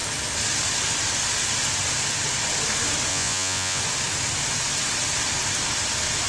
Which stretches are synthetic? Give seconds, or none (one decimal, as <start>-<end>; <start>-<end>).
3.1-3.8